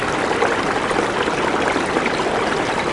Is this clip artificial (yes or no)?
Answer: no